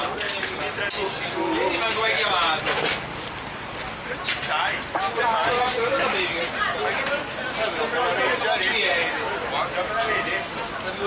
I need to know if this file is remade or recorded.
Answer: recorded